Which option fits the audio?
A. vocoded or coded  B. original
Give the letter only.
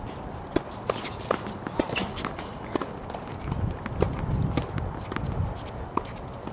B